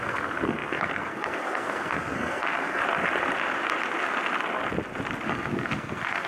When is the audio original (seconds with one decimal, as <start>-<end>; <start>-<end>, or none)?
2.8-5.3